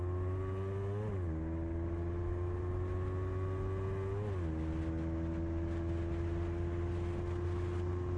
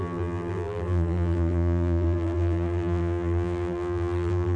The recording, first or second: first